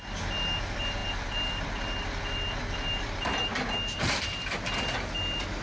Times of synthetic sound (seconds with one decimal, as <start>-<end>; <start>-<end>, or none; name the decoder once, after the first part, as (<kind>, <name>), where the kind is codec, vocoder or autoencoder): none